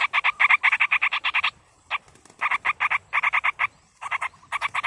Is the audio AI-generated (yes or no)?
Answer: no